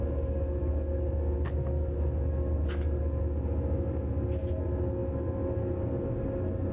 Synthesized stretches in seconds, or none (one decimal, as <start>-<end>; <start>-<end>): none